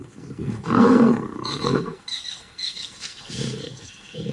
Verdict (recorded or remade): remade